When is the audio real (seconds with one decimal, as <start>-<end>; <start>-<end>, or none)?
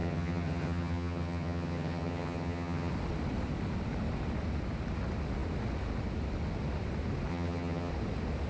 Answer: 2.9-7.3; 7.9-8.5